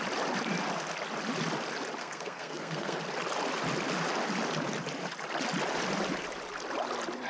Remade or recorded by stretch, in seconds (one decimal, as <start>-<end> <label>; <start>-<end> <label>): 0.0-2.0 recorded; 2.0-3.0 remade; 3.0-7.3 recorded

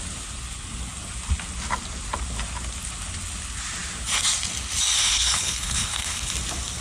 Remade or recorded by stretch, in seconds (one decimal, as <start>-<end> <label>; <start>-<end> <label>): 0.0-5.0 recorded; 5.0-6.3 remade; 6.3-6.8 recorded

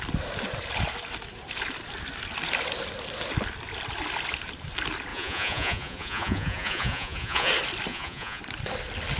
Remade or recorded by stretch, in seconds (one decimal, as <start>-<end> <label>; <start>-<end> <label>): 0.0-5.1 recorded; 5.1-7.5 remade; 7.5-7.9 recorded; 7.9-8.4 remade; 8.4-9.2 recorded

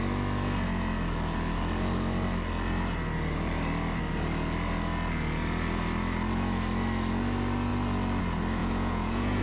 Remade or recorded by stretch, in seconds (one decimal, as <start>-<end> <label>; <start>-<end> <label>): 0.0-8.6 recorded; 8.6-9.4 remade